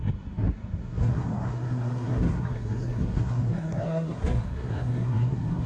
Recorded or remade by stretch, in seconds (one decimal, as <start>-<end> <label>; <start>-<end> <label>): 0.0-5.7 remade